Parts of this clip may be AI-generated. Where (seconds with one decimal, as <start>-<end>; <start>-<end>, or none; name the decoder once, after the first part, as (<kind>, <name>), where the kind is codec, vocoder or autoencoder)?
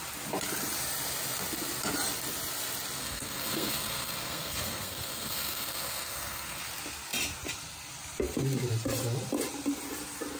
3.0-6.6 (codec, SNAC)